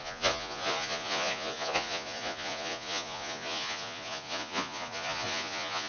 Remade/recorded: remade